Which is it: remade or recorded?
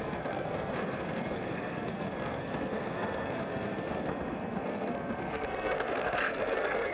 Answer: remade